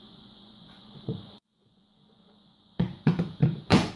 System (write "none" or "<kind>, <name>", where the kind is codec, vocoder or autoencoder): vocoder, Vocos